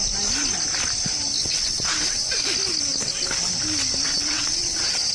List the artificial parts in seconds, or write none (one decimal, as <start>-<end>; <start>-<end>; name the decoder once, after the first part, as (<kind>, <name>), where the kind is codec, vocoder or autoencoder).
1.4-2.4 (vocoder, WaveNeXt); 4.1-5.1